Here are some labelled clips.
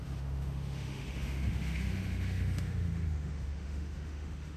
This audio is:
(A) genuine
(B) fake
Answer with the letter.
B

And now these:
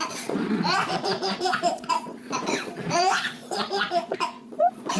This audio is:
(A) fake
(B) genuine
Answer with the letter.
A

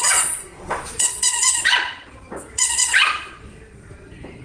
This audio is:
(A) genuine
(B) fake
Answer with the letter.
B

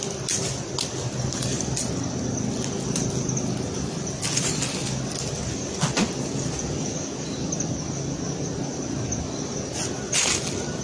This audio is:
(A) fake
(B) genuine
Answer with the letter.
B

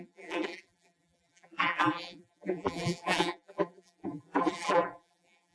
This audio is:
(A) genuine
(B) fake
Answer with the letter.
B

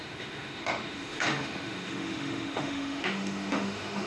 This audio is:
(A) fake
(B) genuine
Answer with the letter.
A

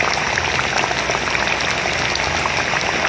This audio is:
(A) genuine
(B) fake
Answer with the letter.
A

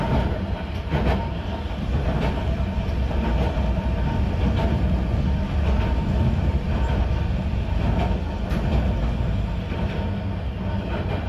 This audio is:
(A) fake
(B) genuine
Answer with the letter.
B